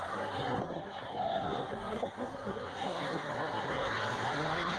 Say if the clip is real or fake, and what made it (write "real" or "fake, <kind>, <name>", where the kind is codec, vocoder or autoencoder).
fake, codec, SNAC